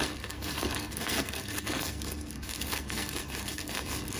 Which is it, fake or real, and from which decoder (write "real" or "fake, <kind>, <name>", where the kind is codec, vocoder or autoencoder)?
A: fake, codec, SNAC